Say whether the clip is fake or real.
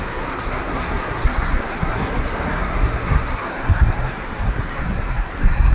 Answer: fake